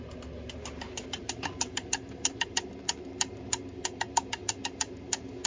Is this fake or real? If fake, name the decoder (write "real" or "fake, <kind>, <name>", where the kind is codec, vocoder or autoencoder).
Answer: real